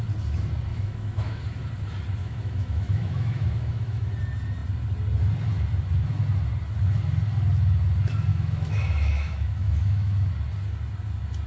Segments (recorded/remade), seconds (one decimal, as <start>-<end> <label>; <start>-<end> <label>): 0.0-0.7 recorded; 0.7-1.4 remade; 1.4-2.2 recorded; 2.2-4.1 remade; 4.1-8.3 recorded; 8.3-10.3 remade; 10.3-11.5 recorded